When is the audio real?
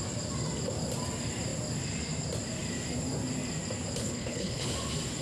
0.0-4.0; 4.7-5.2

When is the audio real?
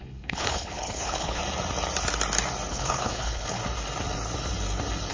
1.4-2.7; 3.6-5.1